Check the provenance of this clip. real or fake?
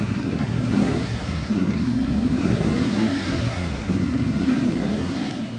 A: fake